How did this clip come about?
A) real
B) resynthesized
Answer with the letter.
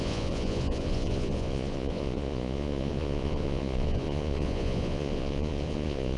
B